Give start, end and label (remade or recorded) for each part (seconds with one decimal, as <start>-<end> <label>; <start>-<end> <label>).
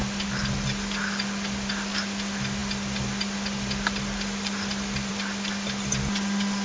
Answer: 0.0-6.6 recorded